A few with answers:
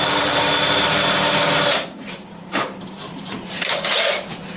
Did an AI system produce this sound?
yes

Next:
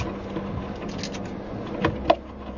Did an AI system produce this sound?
no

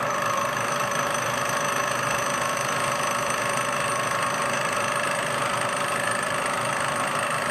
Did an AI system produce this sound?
yes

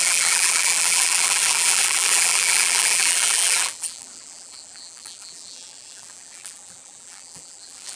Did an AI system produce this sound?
yes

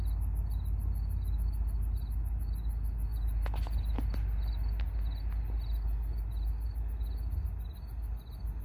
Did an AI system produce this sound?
no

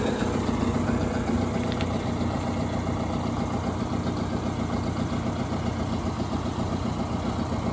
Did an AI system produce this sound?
no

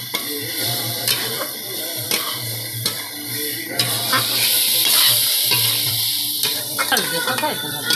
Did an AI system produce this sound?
yes